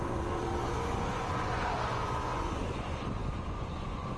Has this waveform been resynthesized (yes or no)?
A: yes